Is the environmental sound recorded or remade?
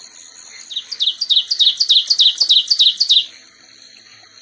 recorded